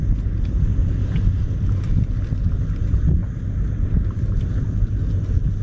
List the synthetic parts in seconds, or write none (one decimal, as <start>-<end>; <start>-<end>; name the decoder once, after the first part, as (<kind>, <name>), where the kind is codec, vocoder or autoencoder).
1.0-2.1 (vocoder, BigVGAN v2); 3.2-5.0